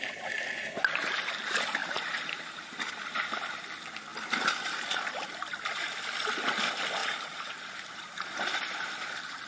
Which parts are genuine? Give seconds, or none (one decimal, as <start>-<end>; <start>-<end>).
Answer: 0.0-1.8; 2.9-4.1; 5.0-7.0; 7.7-9.5